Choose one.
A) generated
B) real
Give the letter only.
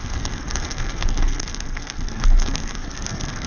A